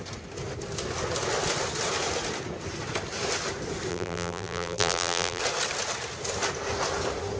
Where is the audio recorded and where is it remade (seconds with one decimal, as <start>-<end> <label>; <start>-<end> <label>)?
0.0-3.9 recorded; 3.9-5.4 remade; 5.4-7.4 recorded